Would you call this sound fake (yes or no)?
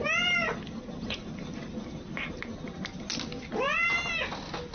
no